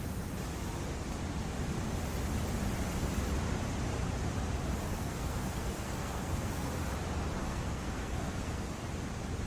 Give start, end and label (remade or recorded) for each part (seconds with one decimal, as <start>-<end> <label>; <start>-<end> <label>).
0.0-4.9 recorded; 4.9-6.7 remade; 6.7-7.4 recorded; 7.4-8.8 remade; 8.8-9.5 recorded